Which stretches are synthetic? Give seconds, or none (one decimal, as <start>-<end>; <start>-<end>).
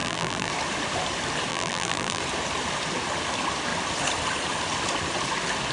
0.0-0.5; 1.5-2.2